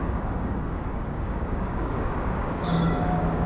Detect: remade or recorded remade